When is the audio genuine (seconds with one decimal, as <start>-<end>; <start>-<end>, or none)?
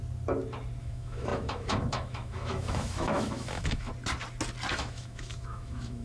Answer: 0.0-0.8; 3.9-4.7